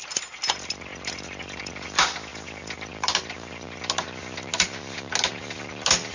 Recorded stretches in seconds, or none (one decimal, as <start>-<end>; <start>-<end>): 0.0-6.1